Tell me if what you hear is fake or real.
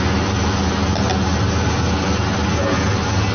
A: real